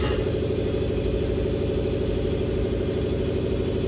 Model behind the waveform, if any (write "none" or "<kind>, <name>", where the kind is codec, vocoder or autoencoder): none